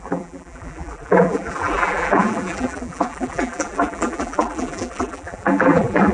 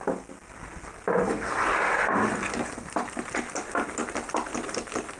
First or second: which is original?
second